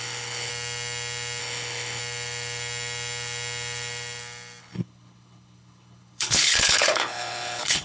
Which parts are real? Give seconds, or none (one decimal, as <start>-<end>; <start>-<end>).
0.5-1.4; 2.0-4.6